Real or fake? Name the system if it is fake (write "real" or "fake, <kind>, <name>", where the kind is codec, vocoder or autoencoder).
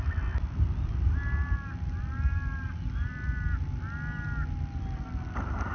real